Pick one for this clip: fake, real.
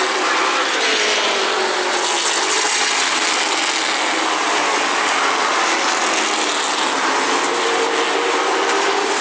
real